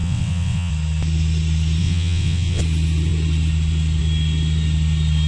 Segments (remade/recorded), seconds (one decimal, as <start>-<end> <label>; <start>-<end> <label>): 0.0-0.7 remade; 0.7-1.8 recorded; 1.8-2.6 remade; 2.6-5.3 recorded

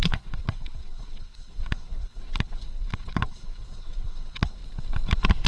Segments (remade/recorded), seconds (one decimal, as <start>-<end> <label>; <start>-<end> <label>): 0.0-4.6 remade; 4.6-5.5 recorded